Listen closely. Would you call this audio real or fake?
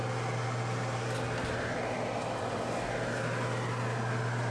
real